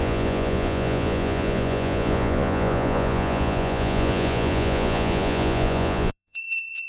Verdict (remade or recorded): remade